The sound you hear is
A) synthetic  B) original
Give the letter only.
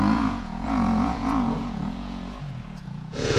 A